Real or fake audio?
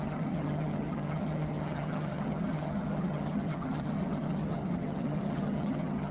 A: fake